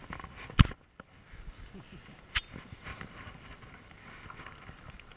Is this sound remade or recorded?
recorded